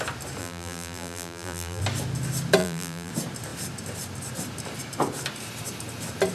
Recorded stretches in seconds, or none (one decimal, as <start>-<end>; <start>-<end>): 0.0-0.4; 1.8-2.6; 3.1-6.3